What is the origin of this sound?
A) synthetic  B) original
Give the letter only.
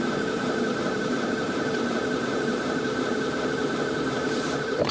A